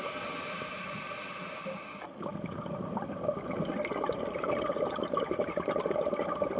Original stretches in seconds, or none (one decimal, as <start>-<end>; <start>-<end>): 0.0-6.6